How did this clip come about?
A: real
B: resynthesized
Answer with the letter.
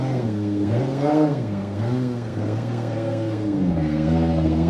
B